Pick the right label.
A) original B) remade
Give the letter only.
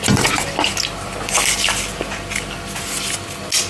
A